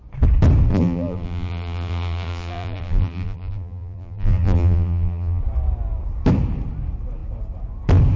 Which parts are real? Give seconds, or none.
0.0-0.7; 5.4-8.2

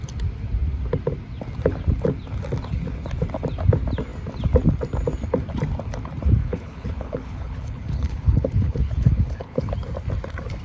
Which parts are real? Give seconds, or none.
0.0-6.4; 9.7-10.6

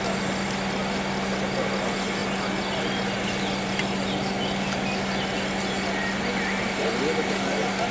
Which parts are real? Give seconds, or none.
0.0-7.9

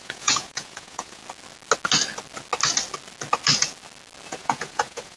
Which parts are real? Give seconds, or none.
1.2-4.3

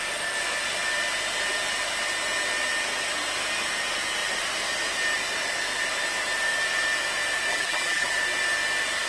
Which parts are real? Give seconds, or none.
0.0-7.5; 8.1-9.1

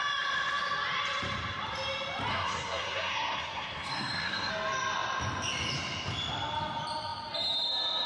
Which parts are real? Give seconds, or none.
0.0-2.3; 4.5-8.1

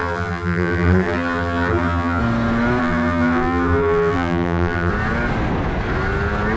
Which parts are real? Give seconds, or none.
2.2-2.8; 4.9-6.6